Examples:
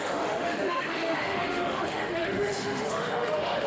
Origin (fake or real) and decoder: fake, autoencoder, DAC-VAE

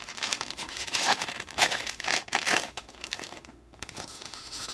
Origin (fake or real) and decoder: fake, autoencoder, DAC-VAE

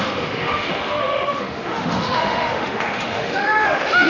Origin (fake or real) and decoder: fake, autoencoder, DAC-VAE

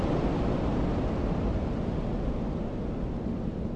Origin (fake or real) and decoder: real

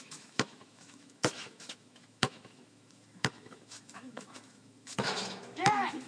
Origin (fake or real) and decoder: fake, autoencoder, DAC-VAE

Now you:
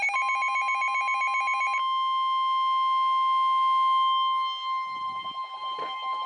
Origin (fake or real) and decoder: real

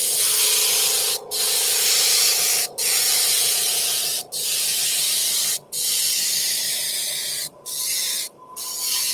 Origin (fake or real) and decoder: real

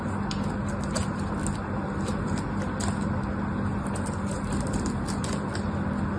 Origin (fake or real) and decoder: real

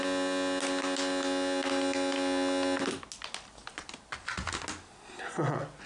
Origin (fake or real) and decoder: real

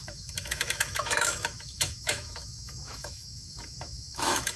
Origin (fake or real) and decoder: fake, autoencoder, DAC-VAE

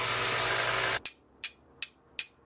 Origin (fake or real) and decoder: real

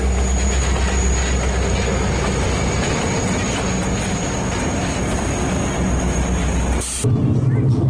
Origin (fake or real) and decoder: real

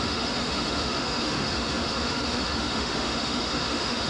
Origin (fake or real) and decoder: fake, autoencoder, DAC-VAE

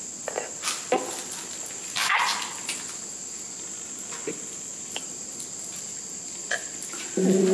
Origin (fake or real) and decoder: real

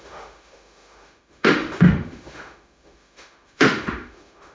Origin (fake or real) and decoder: fake, autoencoder, DAC-VAE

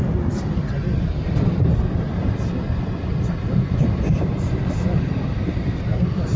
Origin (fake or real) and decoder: real